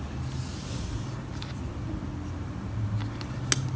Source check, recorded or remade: recorded